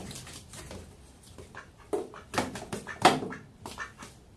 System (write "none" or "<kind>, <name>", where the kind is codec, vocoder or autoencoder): none